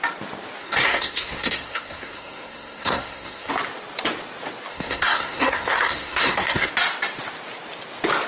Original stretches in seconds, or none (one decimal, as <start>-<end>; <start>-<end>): 0.0-0.6; 3.5-4.7; 6.7-8.3